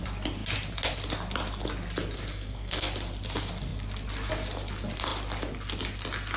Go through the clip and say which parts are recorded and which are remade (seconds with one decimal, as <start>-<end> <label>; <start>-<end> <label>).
0.0-2.3 recorded; 2.3-2.9 remade; 2.9-6.4 recorded